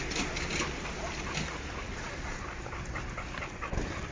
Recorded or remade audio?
recorded